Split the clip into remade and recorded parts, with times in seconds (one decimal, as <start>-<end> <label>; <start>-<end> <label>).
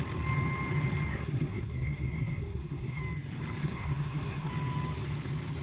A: 0.0-1.1 recorded; 1.1-3.0 remade; 3.0-3.6 recorded; 3.6-4.5 remade; 4.5-5.6 recorded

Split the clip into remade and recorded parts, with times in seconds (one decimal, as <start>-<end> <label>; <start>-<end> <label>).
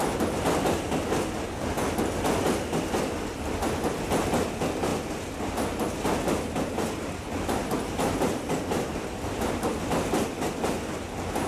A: 0.0-11.5 recorded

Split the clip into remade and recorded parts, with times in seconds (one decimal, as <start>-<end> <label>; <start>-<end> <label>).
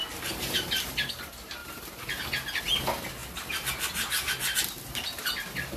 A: 0.0-5.8 recorded